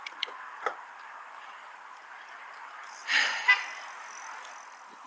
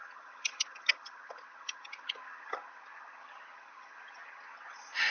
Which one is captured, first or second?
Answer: first